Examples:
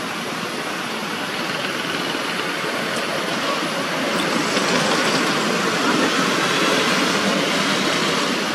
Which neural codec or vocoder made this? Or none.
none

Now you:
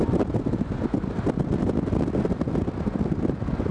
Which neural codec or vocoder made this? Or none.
none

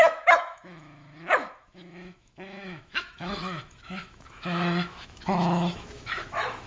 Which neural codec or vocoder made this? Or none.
autoencoder, DAC-VAE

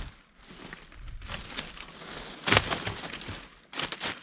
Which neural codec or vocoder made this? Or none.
none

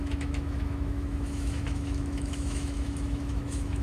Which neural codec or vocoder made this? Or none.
autoencoder, DAC-VAE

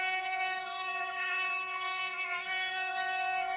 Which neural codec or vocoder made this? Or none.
autoencoder, DAC-VAE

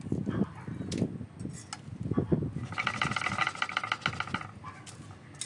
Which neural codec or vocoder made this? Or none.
none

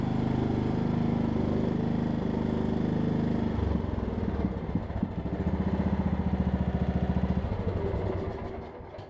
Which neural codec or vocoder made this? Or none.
none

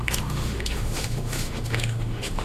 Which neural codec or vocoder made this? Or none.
autoencoder, DAC-VAE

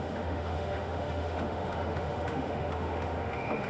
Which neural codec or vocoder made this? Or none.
autoencoder, DAC-VAE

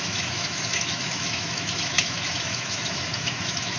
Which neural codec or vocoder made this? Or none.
autoencoder, DAC-VAE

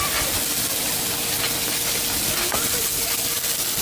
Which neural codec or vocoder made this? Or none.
none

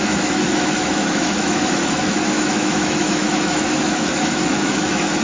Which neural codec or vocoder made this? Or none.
autoencoder, DAC-VAE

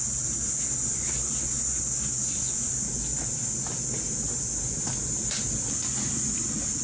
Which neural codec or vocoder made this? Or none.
none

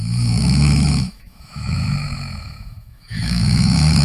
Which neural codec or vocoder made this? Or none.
autoencoder, DAC-VAE